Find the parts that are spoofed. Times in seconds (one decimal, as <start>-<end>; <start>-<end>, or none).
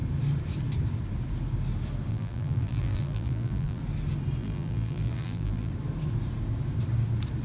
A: 2.1-3.8; 4.4-5.7